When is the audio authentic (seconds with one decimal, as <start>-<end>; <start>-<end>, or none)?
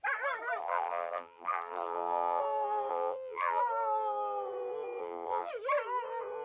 0.0-0.6; 2.4-2.9; 3.6-5.0; 5.5-6.4